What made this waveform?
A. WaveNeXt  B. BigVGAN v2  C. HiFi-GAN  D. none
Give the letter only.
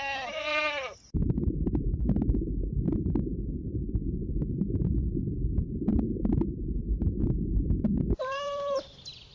B